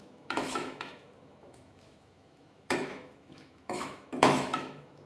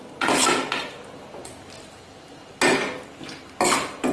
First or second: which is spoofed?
first